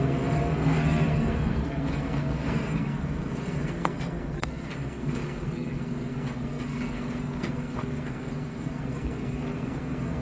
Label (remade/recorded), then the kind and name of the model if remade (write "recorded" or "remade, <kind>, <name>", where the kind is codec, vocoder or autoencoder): remade, codec, SNAC